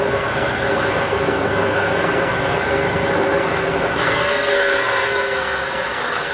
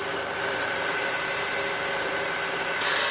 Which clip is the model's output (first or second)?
first